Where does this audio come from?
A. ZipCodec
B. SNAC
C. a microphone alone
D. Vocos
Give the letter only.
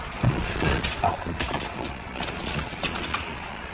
D